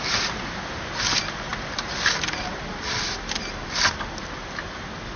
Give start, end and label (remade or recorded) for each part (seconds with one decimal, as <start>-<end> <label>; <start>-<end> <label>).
0.0-5.2 recorded